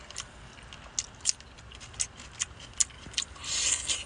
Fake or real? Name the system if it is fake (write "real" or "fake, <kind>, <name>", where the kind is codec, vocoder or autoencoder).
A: real